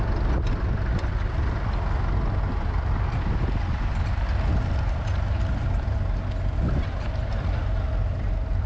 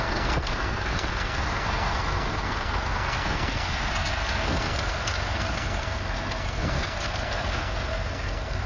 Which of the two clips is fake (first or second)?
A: second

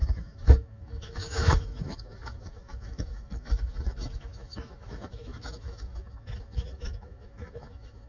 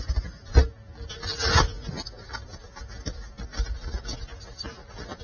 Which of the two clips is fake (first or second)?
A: first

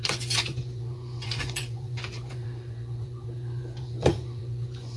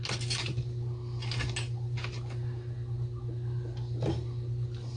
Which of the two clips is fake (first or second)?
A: first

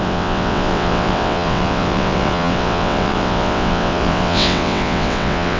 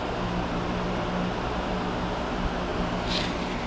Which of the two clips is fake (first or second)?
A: first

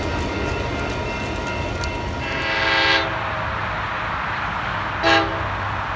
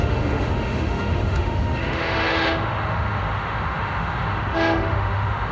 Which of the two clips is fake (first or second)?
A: second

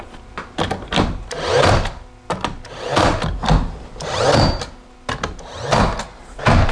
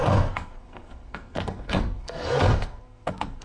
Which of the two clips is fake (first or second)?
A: second